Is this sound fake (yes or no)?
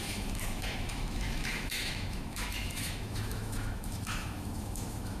yes